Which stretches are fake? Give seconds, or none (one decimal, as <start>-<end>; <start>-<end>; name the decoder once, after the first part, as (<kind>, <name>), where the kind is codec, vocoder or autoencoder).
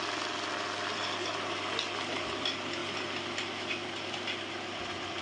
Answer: none